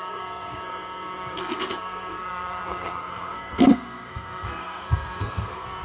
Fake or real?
fake